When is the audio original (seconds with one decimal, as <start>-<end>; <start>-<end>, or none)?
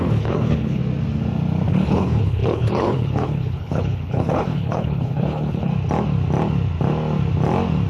0.8-1.7; 5.7-7.9